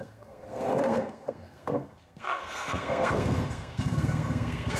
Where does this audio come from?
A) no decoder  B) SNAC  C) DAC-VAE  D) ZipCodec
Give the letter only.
B